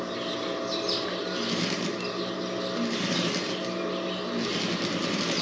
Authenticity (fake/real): real